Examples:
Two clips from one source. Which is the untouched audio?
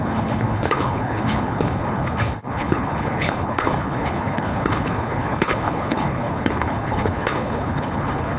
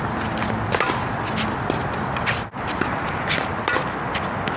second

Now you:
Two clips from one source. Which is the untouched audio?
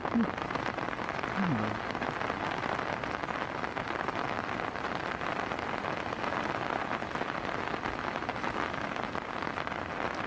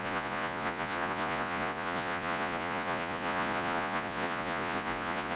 first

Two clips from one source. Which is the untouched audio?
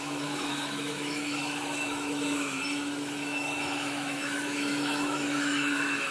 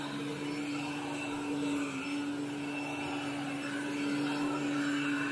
second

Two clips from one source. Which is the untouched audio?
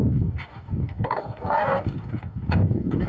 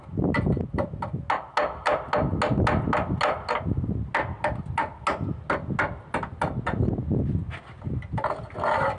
second